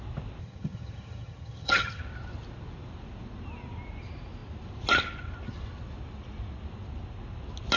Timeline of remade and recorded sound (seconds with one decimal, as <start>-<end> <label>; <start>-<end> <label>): 0.0-0.4 recorded; 0.4-2.0 remade; 2.0-7.8 recorded